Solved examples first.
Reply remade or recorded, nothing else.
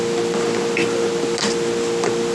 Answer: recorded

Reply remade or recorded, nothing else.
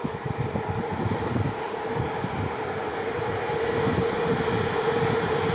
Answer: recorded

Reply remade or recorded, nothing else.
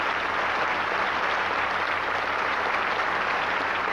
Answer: recorded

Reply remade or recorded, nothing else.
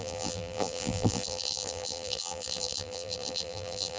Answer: remade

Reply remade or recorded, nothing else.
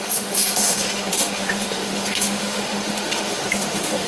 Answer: remade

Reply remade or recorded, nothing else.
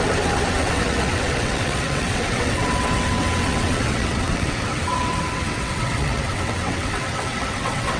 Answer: remade